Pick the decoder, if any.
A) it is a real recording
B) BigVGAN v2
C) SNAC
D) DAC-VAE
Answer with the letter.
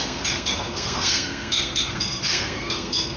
C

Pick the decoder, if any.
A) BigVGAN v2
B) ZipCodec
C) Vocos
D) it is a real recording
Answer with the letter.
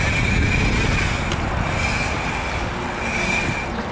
D